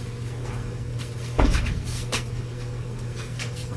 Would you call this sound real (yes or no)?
no